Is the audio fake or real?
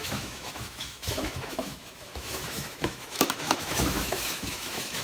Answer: fake